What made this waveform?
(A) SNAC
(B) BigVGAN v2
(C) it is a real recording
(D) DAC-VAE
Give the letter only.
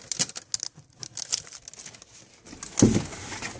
C